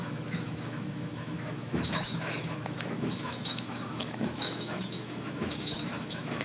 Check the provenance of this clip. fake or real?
fake